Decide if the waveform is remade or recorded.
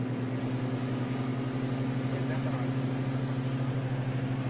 recorded